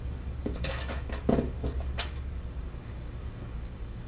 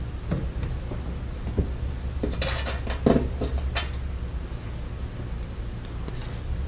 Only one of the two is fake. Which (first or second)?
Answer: first